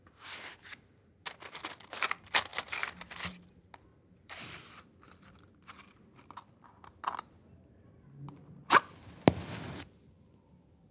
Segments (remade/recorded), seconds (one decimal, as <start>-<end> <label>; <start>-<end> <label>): 0.0-3.9 recorded; 3.9-4.8 remade; 4.8-10.9 recorded